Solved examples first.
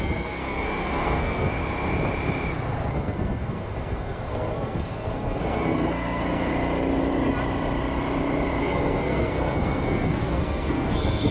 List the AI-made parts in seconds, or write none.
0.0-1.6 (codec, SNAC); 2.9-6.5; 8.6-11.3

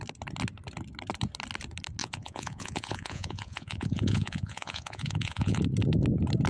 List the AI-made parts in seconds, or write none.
2.0-5.6 (vocoder, Vocos)

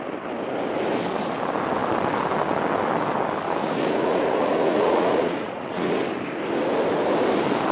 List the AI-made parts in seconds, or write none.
3.6-6.0 (vocoder, Vocos)

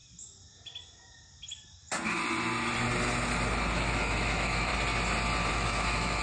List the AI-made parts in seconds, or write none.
3.7-4.7 (autoencoder, DAC-VAE); 5.5-6.2

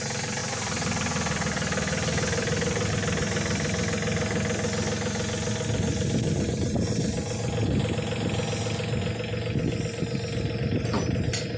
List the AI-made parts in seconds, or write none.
0.4-2.9 (vocoder, BigVGAN v2)

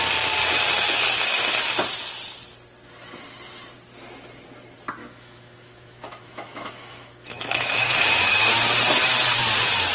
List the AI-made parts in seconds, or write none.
5.0-7.9 (autoencoder, DAC-VAE)